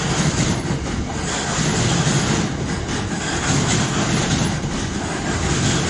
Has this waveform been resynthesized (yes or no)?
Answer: no